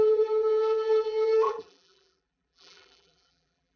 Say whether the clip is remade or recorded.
remade